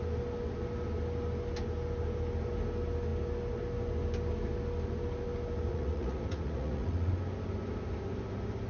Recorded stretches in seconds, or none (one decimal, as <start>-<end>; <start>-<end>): 0.0-5.7; 7.1-8.7